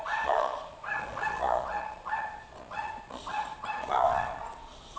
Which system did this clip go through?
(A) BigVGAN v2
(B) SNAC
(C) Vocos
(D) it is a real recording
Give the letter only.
C